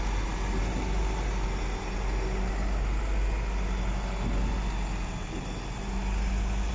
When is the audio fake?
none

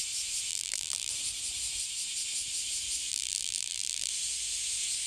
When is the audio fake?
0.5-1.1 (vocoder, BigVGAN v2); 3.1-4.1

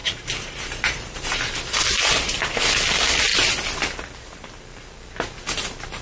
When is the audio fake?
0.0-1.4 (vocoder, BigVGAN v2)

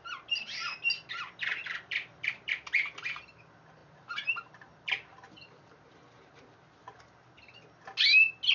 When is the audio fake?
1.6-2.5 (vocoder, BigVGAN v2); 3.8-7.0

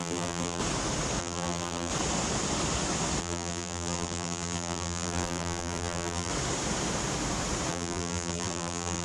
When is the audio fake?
0.0-0.6 (vocoder, BigVGAN v2); 1.2-1.9; 3.2-6.3; 7.7-9.0